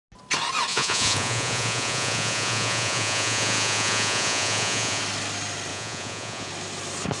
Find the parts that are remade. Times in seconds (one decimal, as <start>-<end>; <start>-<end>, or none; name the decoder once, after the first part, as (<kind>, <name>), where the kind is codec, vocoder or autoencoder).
0.7-5.0 (vocoder, Vocos); 5.7-6.5

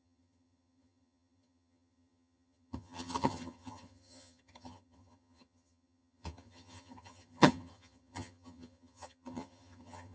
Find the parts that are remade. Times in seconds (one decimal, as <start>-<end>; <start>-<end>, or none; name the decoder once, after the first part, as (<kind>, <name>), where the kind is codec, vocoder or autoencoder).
0.0-10.1 (vocoder, HiFi-GAN)

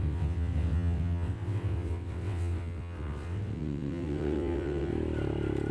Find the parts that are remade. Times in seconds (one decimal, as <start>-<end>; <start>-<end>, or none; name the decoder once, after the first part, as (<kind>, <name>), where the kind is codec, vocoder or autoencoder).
0.0-4.9 (vocoder, WaveNeXt)

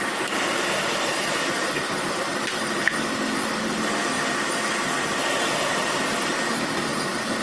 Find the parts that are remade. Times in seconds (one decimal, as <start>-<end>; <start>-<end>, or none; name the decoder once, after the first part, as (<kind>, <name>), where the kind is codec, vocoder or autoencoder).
none

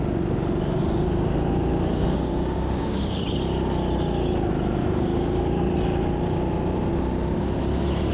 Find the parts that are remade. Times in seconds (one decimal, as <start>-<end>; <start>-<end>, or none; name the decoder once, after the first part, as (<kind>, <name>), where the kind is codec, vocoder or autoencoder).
1.9-3.2 (codec, DAC); 4.8-5.4

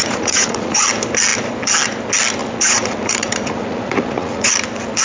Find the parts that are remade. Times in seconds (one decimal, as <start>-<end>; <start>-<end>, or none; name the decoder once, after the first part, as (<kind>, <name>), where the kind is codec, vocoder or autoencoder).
0.0-0.8 (vocoder, Vocos); 2.4-4.5